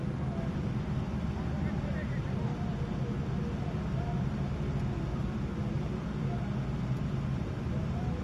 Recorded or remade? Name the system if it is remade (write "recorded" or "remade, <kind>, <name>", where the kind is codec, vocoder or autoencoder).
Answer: recorded